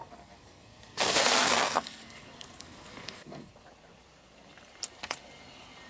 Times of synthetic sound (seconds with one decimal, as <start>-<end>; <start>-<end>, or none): 0.0-3.5